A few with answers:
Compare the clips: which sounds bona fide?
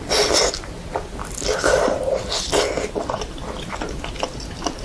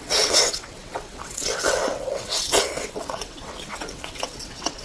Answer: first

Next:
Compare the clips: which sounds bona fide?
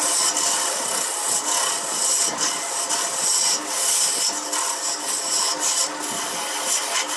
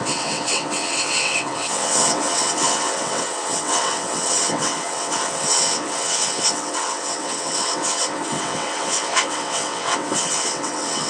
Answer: first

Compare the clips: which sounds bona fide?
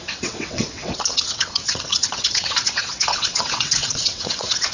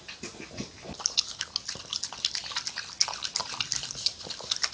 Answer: second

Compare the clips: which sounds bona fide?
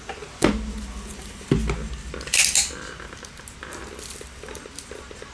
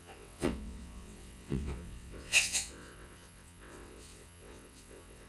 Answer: first